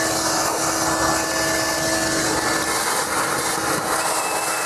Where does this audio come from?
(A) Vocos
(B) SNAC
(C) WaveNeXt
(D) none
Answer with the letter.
D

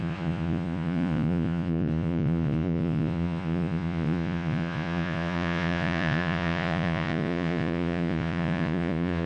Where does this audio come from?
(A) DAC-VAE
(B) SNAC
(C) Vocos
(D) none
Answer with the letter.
C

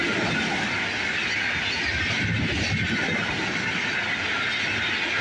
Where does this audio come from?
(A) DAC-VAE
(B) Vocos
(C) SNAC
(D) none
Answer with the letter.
D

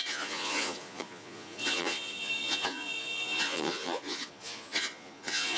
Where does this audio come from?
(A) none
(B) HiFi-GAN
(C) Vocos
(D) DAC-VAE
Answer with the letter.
C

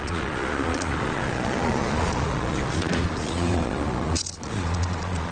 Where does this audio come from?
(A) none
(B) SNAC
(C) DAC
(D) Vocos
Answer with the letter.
D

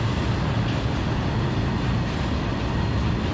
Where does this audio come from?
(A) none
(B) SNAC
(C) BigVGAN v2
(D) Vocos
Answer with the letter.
A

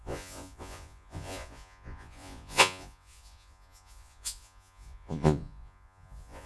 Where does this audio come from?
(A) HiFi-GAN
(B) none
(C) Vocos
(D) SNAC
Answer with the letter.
C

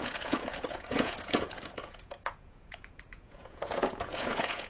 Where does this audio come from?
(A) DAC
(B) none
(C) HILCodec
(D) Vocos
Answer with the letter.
D